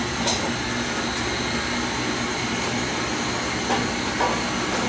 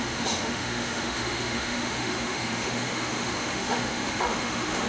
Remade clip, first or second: second